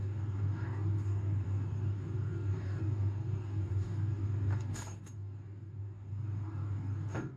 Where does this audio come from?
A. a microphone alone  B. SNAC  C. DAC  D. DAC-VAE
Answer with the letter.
C